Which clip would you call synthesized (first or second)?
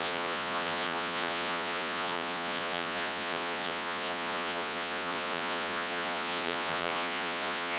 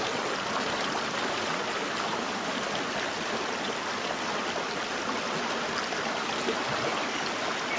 first